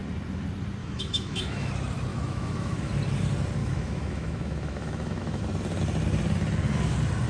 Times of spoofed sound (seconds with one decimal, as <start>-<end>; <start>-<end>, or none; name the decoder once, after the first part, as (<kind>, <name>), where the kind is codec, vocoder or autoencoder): 0.8-1.7 (autoencoder, DAC-VAE); 2.1-2.9; 3.6-5.4